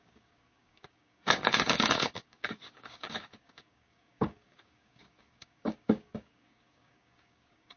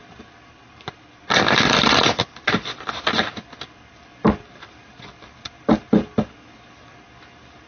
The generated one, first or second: first